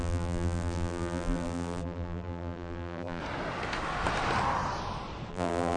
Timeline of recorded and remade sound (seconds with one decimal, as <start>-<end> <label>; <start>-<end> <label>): 0.0-3.2 remade; 3.2-5.3 recorded; 5.3-5.8 remade